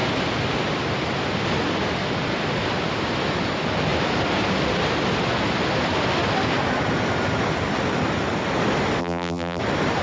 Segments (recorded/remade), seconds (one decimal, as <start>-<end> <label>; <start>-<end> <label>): 0.0-9.0 recorded; 9.0-9.6 remade; 9.6-10.0 recorded